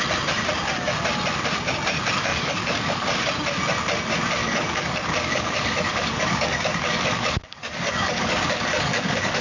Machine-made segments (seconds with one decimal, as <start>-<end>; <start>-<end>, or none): 2.3-3.2; 4.4-9.4